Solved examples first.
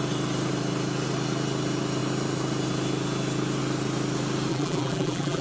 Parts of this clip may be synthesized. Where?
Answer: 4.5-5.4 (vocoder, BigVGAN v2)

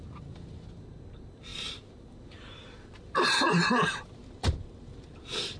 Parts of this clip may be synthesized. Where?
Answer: 0.0-5.6 (vocoder, BigVGAN v2)

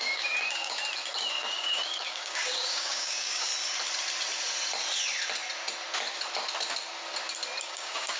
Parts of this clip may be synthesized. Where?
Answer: 0.0-0.8 (codec, DAC); 1.3-3.5; 7.6-8.2

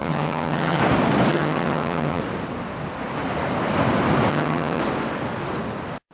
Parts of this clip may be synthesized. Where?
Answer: 0.0-0.8 (vocoder, HiFi-GAN); 1.3-2.2; 4.3-4.8

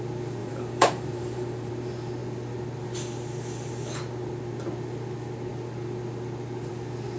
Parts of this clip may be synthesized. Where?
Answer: 0.4-1.7 (vocoder, BigVGAN v2)

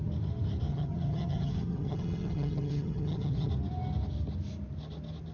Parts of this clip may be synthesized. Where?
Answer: 0.7-3.5 (vocoder, HiFi-GAN)

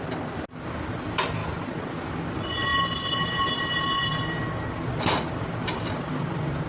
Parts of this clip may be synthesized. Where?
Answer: none

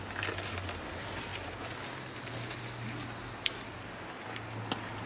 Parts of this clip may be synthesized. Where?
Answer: none